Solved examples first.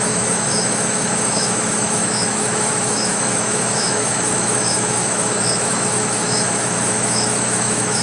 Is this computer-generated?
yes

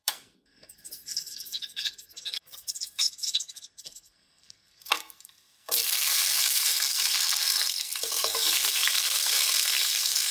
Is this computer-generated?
yes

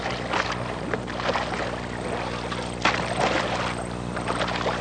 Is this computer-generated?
no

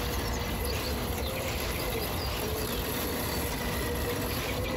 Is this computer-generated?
no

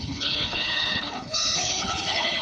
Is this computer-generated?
yes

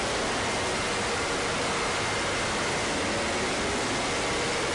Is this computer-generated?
no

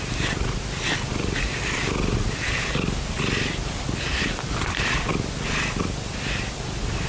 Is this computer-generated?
no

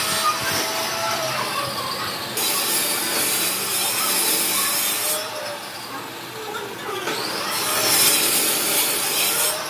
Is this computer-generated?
no